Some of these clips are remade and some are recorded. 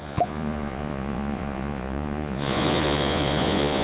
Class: remade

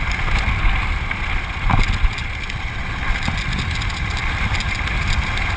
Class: recorded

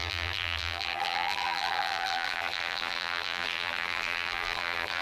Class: remade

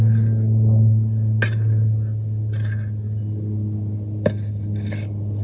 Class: recorded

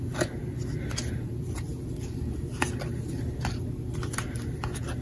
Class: recorded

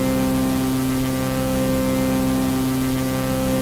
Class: recorded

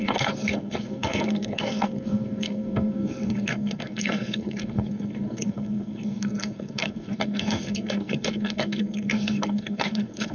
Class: remade